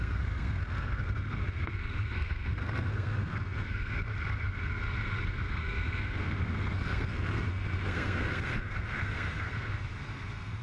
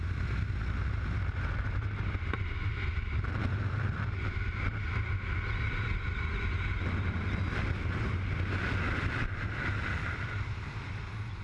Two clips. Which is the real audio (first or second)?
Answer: second